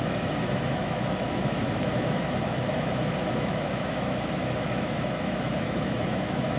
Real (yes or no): no